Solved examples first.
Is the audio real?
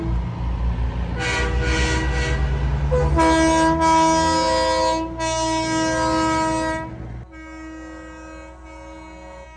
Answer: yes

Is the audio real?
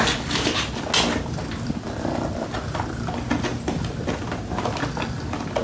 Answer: yes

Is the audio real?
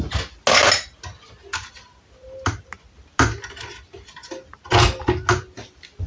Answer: yes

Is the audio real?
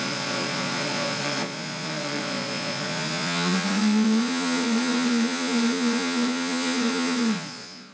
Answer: no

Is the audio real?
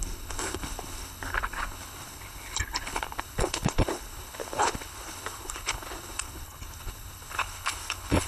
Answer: no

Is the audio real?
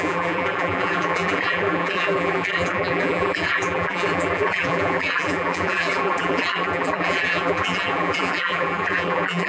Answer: no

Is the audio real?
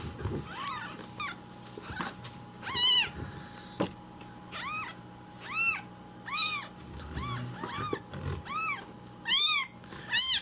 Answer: yes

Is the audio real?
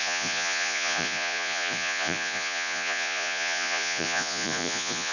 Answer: no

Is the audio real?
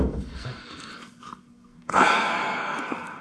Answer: no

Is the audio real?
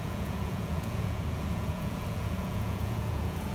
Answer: no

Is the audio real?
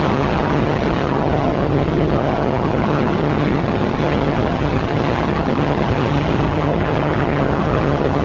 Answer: no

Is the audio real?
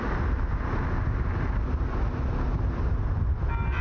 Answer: yes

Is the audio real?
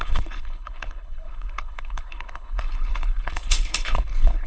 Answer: no